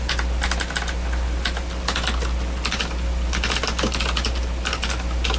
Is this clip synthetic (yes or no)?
no